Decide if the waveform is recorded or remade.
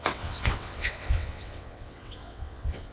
remade